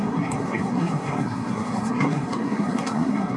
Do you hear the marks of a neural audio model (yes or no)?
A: yes